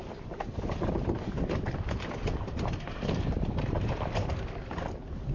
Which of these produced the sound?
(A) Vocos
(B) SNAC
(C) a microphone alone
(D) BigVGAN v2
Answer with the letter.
C